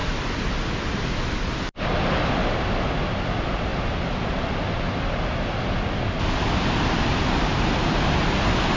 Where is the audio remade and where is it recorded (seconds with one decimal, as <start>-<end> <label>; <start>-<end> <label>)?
0.0-8.8 recorded